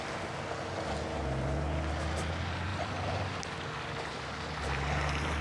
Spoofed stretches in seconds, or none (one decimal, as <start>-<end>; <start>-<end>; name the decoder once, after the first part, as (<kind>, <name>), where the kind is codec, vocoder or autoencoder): 2.7-3.9 (vocoder, BigVGAN v2)